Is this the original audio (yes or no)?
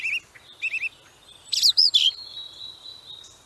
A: yes